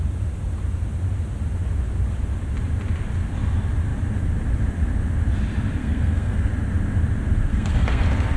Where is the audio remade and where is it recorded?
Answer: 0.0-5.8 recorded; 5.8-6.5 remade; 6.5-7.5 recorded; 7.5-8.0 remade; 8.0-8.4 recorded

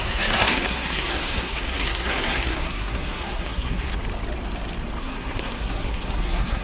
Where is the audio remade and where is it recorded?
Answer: 0.0-3.9 remade; 3.9-5.0 recorded; 5.0-6.6 remade

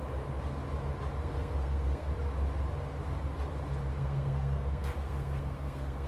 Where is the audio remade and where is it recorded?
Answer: 0.0-1.2 recorded; 1.2-2.1 remade; 2.1-3.9 recorded; 3.9-6.1 remade

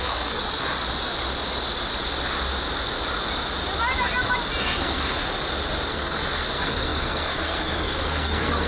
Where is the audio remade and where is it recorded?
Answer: 0.0-0.4 remade; 0.4-4.6 recorded; 4.6-5.2 remade; 5.2-5.9 recorded; 5.9-8.7 remade

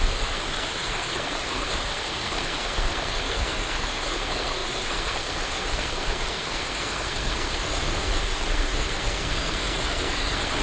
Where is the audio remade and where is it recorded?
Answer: 0.0-10.6 remade

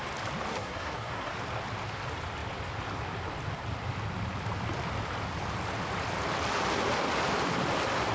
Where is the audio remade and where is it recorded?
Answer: 0.0-0.5 recorded; 0.5-1.3 remade; 1.3-8.1 recorded

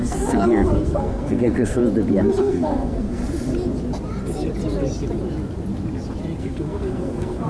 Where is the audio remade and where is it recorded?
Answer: 0.0-1.8 remade; 1.8-2.4 recorded; 2.4-3.2 remade; 3.2-6.4 recorded; 6.4-7.5 remade